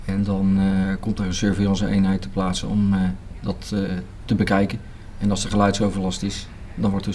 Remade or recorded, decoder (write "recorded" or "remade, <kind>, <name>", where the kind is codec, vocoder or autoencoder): recorded